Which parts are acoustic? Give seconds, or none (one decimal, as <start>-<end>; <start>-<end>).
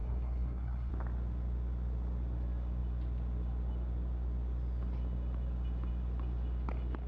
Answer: 0.9-7.1